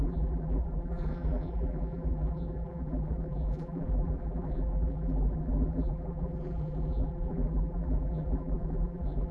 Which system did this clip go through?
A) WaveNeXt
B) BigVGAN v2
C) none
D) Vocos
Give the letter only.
B